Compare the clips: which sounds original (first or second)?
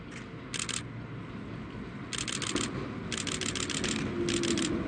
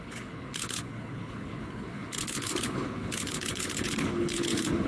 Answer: first